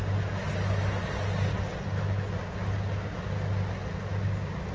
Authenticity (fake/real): real